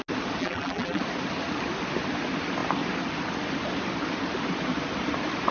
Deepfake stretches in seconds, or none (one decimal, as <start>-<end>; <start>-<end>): 0.4-1.0